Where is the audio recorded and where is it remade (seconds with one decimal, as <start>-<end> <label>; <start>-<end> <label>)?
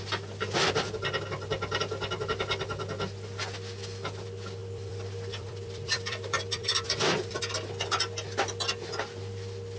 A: 0.0-4.6 recorded; 4.6-7.4 remade; 7.4-9.8 recorded